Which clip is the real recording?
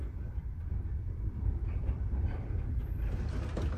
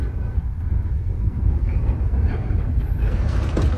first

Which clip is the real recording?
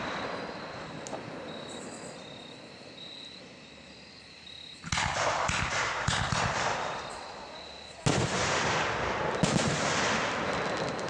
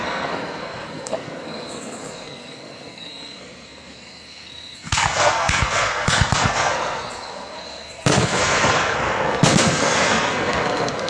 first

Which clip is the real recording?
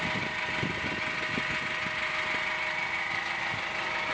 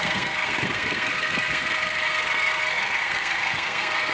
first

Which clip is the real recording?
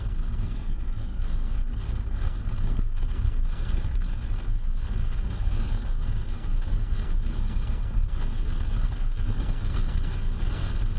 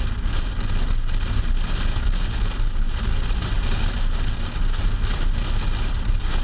second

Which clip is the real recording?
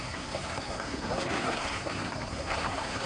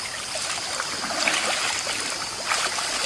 second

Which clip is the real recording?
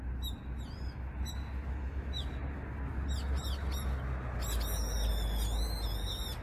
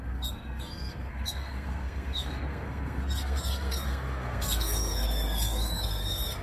first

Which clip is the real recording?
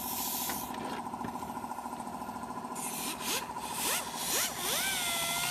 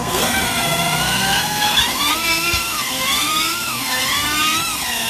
first